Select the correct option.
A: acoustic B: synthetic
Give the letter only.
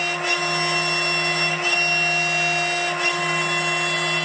A